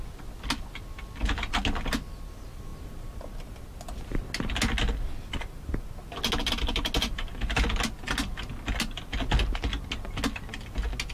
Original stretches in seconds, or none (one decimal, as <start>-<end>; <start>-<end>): 0.0-11.1